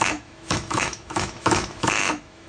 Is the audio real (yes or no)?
no